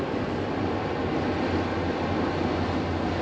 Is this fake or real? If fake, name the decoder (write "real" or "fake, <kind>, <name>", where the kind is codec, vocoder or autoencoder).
real